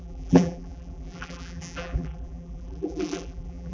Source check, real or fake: fake